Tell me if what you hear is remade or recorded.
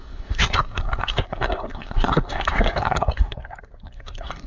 remade